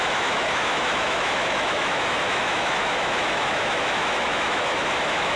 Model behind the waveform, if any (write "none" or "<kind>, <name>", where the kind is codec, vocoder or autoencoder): autoencoder, DAC-VAE